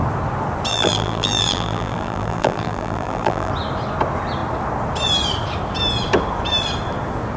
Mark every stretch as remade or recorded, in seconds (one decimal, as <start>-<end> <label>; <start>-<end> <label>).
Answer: 0.0-0.7 recorded; 0.7-3.5 remade; 3.5-7.4 recorded